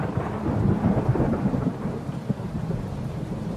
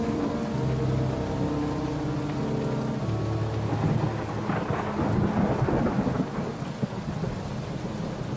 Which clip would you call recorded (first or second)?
second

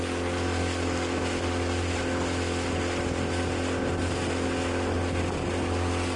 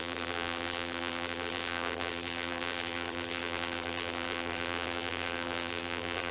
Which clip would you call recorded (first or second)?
first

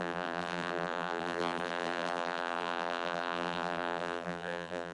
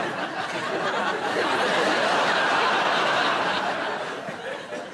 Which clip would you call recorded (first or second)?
second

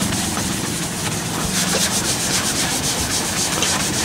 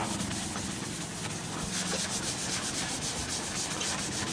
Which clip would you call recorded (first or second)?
second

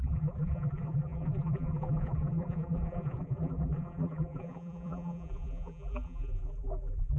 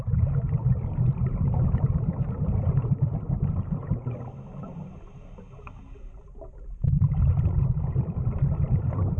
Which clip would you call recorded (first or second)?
second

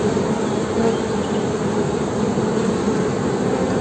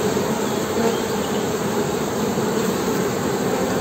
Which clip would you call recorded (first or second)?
first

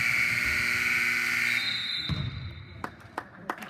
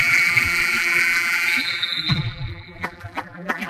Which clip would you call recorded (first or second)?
first